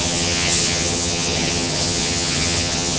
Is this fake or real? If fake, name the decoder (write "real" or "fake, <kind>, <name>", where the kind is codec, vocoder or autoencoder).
fake, vocoder, HiFi-GAN